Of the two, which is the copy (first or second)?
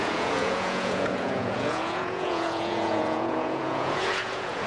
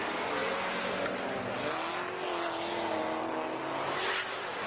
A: first